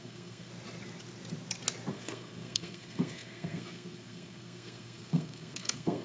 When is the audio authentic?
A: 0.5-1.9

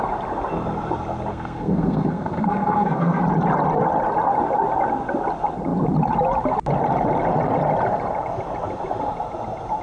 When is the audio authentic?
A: 0.0-1.3; 3.2-9.8

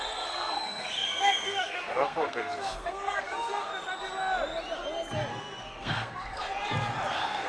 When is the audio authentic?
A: 3.7-5.3; 6.5-7.1

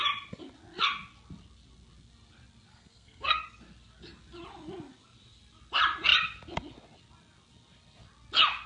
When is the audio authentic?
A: 0.0-2.7; 3.4-8.7

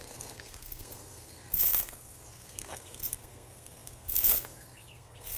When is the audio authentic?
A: none

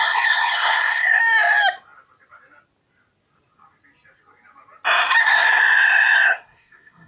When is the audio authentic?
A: 1.2-5.2